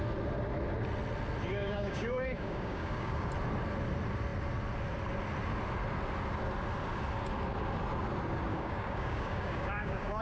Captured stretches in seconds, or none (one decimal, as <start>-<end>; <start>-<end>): 0.0-1.5; 3.3-8.5